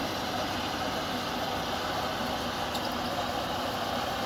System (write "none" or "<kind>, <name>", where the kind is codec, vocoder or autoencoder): none